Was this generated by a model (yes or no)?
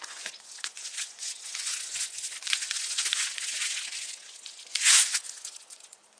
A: yes